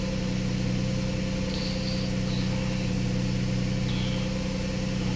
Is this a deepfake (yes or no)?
no